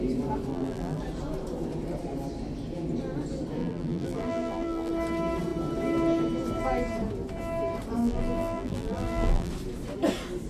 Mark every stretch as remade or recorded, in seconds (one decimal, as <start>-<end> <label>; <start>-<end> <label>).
0.0-0.5 recorded; 0.5-1.0 remade; 1.0-3.6 recorded; 3.6-4.9 remade; 4.9-8.0 recorded; 8.0-9.5 remade; 9.5-10.5 recorded